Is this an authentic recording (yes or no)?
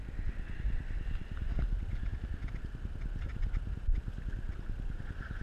yes